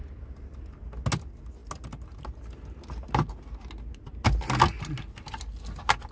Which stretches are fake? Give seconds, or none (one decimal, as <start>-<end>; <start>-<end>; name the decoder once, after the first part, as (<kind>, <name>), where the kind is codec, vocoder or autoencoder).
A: none